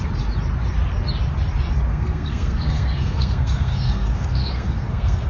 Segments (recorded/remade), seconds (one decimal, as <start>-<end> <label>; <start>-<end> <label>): 0.0-1.9 recorded; 1.9-5.3 remade